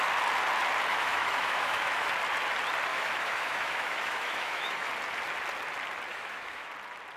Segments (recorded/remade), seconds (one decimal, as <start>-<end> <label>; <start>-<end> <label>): 0.0-0.9 recorded; 0.9-2.1 remade; 2.1-2.9 recorded; 2.9-4.9 remade; 4.9-6.1 recorded; 6.1-6.7 remade; 6.7-7.2 recorded